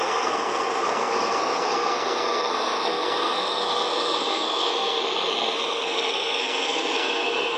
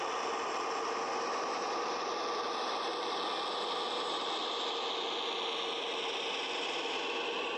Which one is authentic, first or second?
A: second